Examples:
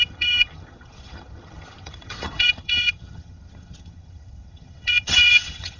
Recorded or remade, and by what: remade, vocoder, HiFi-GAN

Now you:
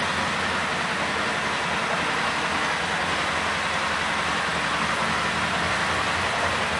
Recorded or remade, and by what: recorded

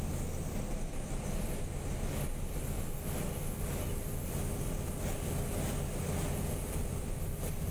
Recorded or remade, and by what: recorded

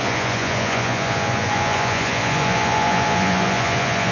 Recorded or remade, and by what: remade, vocoder, Vocos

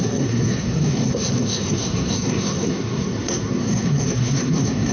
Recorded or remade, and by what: remade, codec, SNAC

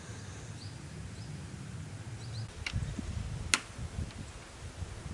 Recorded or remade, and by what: recorded